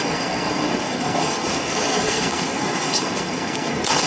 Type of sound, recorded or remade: remade